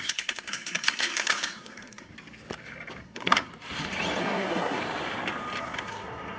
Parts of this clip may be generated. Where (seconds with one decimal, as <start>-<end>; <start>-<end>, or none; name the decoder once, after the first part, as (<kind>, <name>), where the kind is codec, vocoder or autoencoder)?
0.0-2.1 (codec, SNAC); 3.0-3.5; 4.2-4.8; 5.6-6.4